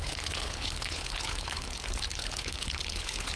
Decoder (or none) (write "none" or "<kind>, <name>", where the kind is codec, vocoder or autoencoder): codec, HILCodec